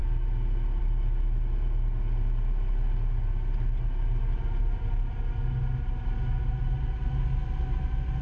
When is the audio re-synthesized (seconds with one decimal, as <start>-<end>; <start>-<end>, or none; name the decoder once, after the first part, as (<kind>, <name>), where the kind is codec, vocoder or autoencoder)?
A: none